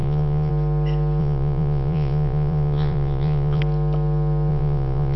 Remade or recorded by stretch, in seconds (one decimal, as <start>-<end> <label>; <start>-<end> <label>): 0.0-0.5 remade; 0.5-1.2 recorded; 1.2-3.6 remade; 3.6-4.5 recorded; 4.5-5.2 remade